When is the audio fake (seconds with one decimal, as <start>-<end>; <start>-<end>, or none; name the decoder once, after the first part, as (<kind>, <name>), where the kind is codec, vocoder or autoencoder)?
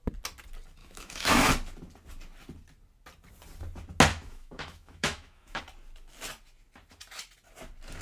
0.8-1.5 (autoencoder, DAC-VAE); 4.1-5.6